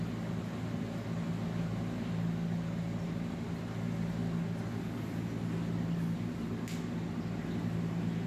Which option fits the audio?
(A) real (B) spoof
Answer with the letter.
A